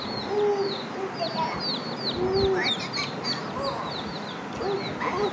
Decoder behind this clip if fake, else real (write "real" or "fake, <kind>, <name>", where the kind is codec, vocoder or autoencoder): real